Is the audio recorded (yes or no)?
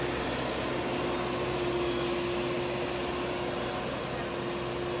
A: yes